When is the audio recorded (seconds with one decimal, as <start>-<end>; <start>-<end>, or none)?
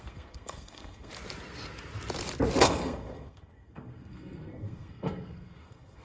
1.1-2.6